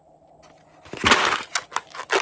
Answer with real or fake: real